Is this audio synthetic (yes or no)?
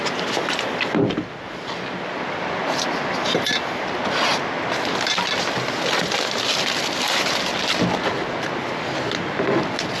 no